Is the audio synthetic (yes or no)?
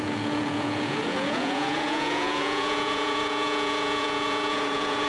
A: yes